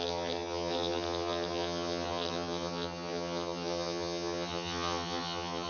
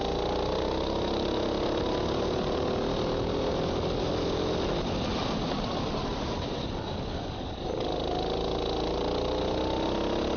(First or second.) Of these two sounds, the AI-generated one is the first